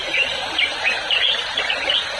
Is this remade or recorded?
remade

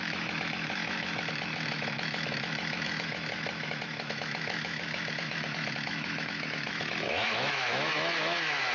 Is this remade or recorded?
remade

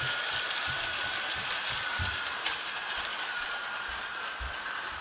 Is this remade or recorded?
remade